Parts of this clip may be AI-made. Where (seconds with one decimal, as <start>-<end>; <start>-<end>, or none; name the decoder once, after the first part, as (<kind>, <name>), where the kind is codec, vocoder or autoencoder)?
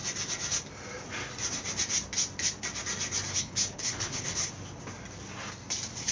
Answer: 3.3-4.5 (codec, HILCodec)